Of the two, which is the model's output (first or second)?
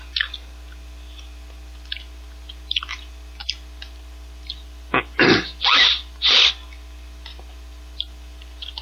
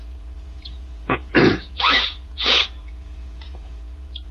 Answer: second